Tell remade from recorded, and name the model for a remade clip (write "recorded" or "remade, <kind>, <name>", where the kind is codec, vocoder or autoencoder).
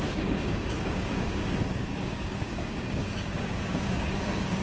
remade, codec, DAC